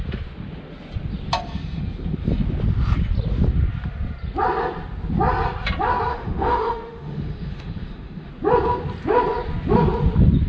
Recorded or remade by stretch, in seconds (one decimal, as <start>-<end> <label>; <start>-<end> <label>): 0.0-6.1 recorded; 6.1-8.3 remade; 8.3-10.5 recorded